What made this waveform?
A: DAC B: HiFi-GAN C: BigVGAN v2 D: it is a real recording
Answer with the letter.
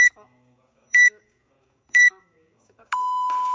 A